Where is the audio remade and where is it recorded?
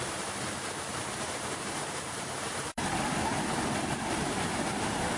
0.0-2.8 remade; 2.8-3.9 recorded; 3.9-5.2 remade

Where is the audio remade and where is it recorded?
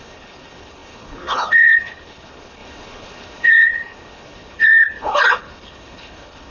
0.0-6.5 remade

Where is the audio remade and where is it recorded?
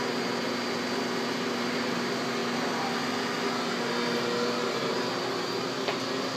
0.0-6.4 recorded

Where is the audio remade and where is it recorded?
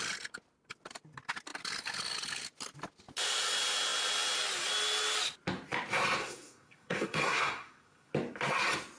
0.0-6.2 recorded; 6.2-8.1 remade; 8.1-9.0 recorded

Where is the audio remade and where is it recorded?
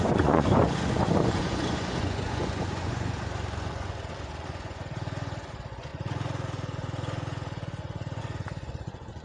0.0-9.2 remade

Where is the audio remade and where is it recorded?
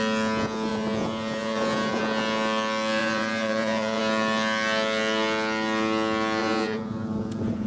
0.0-0.7 recorded; 0.7-2.0 remade; 2.0-3.0 recorded; 3.0-4.0 remade; 4.0-6.4 recorded; 6.4-7.7 remade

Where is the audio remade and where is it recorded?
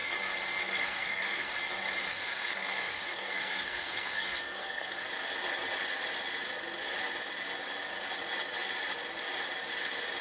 0.0-0.6 recorded; 0.6-1.5 remade; 1.5-2.1 recorded; 2.1-5.0 remade; 5.0-10.2 recorded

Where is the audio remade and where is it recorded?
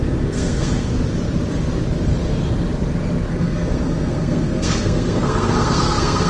0.0-0.9 remade; 0.9-3.3 recorded; 3.3-6.3 remade